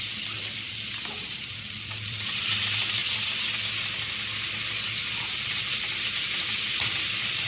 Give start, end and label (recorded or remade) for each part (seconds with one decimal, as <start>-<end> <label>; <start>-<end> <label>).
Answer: 0.0-3.0 remade; 3.0-5.8 recorded; 5.8-7.5 remade